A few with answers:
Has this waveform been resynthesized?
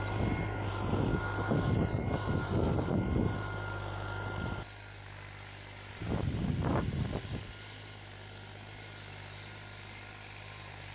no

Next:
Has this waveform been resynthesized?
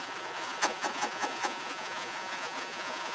yes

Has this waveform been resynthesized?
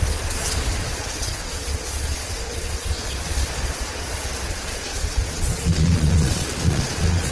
yes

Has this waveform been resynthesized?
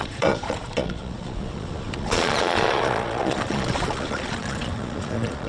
yes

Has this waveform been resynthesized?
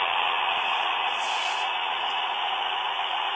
yes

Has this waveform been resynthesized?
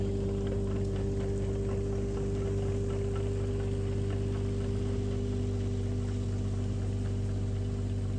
no